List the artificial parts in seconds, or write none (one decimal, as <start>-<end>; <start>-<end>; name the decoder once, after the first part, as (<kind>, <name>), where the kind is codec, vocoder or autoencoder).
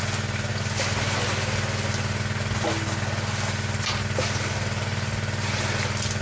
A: none